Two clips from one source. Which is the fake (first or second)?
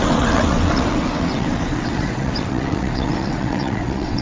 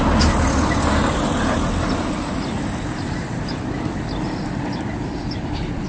first